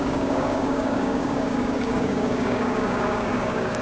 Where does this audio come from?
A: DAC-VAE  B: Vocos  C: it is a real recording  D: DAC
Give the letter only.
D